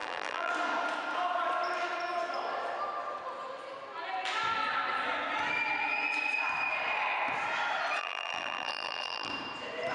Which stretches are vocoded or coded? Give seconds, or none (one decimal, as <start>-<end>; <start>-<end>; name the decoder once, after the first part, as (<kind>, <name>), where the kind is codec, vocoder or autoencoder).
0.0-0.5 (vocoder, BigVGAN v2); 8.0-9.3